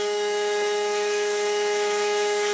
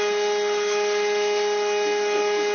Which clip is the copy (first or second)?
first